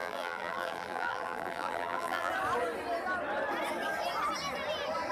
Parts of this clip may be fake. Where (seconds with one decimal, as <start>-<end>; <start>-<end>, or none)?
0.0-2.3